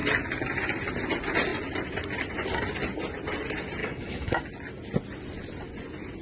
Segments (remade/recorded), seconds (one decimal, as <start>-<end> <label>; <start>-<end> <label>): 0.0-3.8 recorded; 3.8-4.4 remade; 4.4-6.2 recorded